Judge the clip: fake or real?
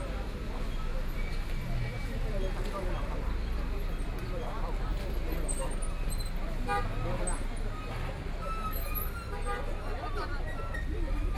real